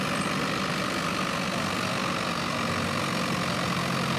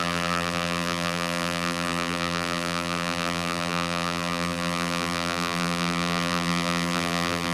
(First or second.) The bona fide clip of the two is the first